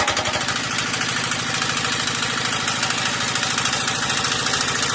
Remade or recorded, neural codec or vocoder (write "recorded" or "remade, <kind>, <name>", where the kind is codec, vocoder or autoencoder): recorded